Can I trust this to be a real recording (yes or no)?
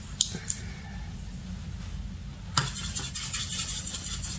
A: yes